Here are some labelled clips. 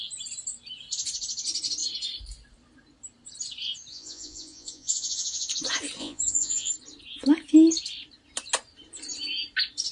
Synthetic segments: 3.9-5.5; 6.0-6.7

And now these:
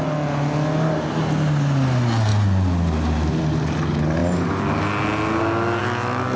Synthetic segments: none

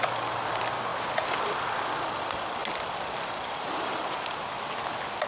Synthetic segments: none

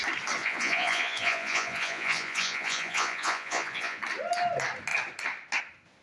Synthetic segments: 0.4-4.0

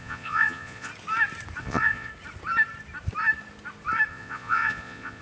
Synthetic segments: 0.0-0.9; 1.6-2.1; 4.1-5.2

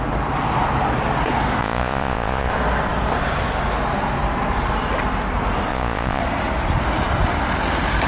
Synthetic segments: 1.6-2.5; 5.7-6.2